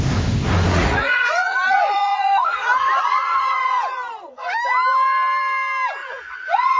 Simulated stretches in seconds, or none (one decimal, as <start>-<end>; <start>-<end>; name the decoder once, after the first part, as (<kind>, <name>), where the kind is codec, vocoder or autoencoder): 0.7-4.5 (vocoder, Vocos); 6.0-6.8